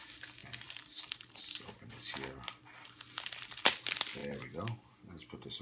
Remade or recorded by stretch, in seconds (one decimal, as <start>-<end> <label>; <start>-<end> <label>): 0.0-0.4 recorded; 0.4-1.9 remade; 1.9-4.2 recorded; 4.2-4.9 remade; 4.9-5.6 recorded